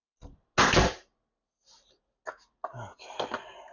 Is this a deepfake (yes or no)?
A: no